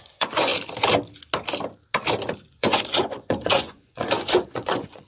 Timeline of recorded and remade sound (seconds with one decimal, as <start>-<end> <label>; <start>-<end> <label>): 0.0-0.5 remade; 0.5-2.5 recorded; 2.5-5.1 remade